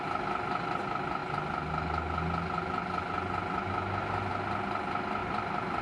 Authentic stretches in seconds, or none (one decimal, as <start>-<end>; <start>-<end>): 0.0-5.8